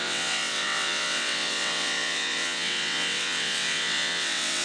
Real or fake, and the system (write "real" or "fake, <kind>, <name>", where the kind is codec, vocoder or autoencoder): fake, vocoder, WaveNeXt